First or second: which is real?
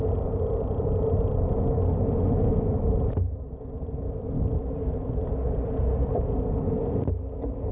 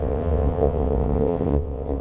first